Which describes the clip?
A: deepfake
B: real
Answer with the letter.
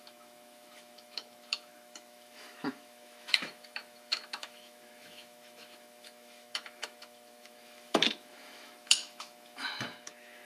A